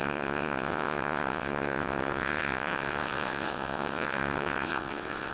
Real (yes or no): no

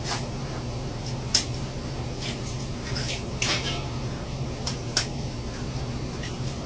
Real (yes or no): yes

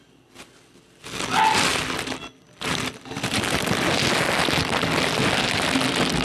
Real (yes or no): yes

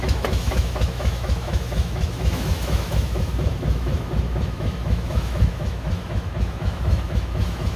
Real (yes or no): no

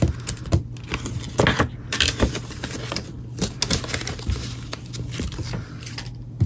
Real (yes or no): yes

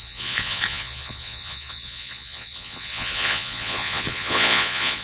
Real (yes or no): no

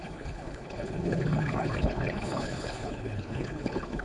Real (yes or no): no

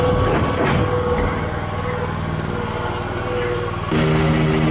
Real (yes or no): yes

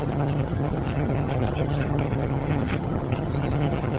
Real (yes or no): no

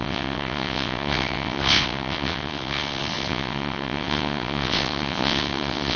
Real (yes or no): no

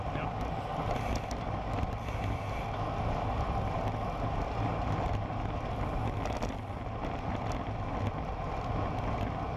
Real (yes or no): yes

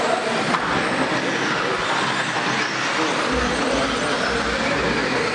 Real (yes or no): yes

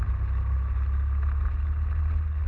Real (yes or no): yes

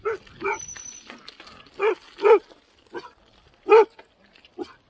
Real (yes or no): yes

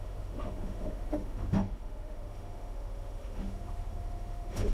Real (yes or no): no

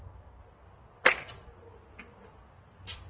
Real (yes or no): yes